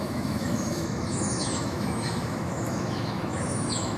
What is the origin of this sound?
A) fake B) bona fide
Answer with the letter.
A